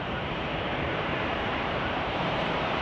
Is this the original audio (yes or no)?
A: no